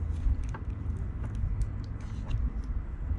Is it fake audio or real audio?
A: real